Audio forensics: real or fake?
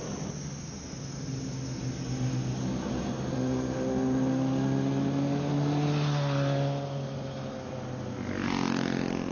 real